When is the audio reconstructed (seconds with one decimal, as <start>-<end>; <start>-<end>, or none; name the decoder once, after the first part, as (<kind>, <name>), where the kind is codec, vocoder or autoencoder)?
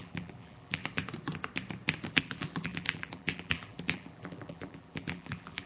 0.0-0.8 (vocoder, BigVGAN v2); 2.1-5.7